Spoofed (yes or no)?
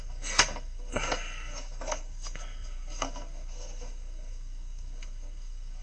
yes